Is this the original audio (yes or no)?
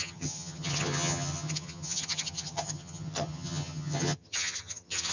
no